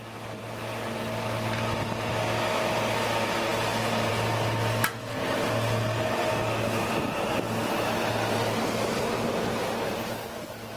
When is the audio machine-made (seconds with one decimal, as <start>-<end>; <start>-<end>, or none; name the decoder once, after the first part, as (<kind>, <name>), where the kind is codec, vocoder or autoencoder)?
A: none